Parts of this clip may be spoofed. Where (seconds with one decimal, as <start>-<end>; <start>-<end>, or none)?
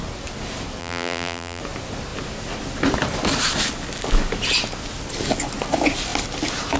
0.8-1.6